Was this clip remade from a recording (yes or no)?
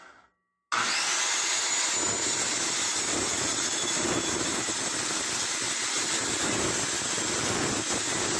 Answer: no